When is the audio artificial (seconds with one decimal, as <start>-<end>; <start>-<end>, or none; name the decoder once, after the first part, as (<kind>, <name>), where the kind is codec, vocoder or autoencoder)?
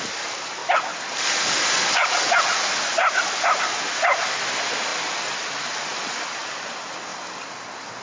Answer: 0.0-0.6 (vocoder, BigVGAN v2); 4.3-8.0